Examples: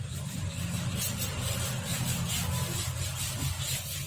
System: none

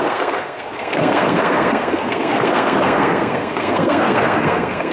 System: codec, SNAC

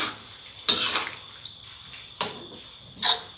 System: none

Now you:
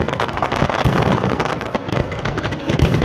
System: codec, SNAC